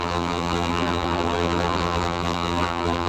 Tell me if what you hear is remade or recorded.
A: remade